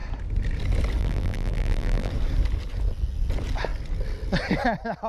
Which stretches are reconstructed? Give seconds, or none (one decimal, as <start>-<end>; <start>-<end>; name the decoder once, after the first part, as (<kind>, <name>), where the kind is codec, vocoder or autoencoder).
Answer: 1.0-2.1 (vocoder, BigVGAN v2)